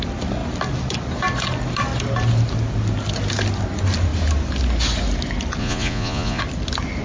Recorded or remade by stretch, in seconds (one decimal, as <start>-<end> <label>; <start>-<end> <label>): 0.0-5.6 recorded; 5.6-6.4 remade; 6.4-7.0 recorded